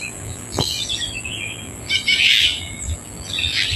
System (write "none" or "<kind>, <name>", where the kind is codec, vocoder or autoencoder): vocoder, BigVGAN v2